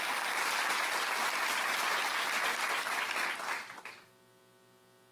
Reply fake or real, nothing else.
real